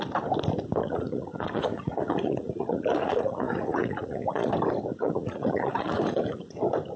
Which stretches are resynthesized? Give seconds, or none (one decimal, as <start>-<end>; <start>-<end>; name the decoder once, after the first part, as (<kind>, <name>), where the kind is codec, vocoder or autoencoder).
0.8-4.5 (vocoder, Vocos); 5.0-6.6